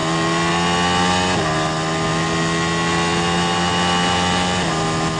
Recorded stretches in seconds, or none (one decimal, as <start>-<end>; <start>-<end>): 0.0-5.2